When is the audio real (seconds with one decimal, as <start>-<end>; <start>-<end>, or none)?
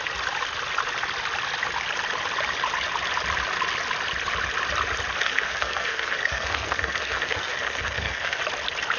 0.0-5.2; 8.4-9.0